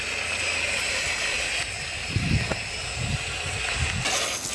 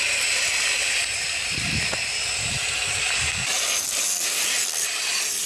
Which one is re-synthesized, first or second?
second